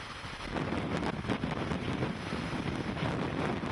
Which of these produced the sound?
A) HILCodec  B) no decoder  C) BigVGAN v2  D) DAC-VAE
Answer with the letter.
B